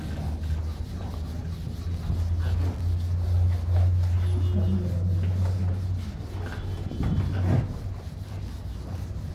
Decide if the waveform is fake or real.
real